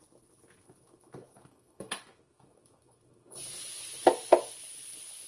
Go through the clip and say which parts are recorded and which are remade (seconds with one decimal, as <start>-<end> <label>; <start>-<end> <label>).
0.0-0.6 recorded; 0.6-3.4 remade; 3.4-5.3 recorded